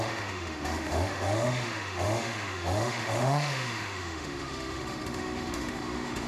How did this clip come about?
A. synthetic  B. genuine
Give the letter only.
A